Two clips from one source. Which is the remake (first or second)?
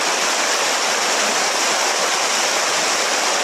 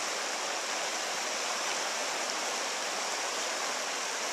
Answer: second